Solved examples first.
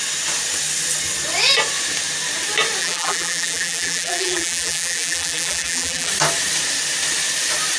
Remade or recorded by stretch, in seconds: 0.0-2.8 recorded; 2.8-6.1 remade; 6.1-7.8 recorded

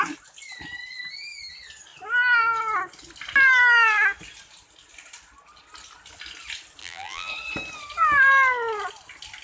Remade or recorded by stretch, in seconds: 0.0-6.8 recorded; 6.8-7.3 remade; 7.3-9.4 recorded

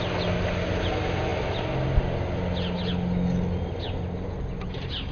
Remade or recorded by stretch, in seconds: 0.0-5.1 recorded

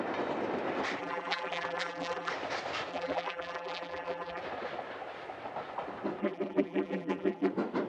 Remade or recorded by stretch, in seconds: 0.0-1.0 recorded; 1.0-2.3 remade; 2.3-2.9 recorded; 2.9-4.4 remade; 4.4-6.2 recorded; 6.2-7.5 remade; 7.5-7.9 recorded